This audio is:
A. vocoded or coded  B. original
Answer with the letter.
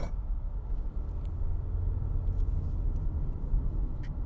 B